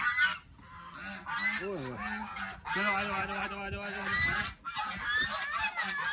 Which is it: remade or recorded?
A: recorded